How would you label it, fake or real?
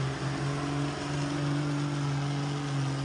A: real